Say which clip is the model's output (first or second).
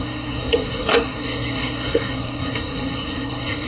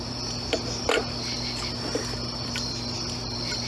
first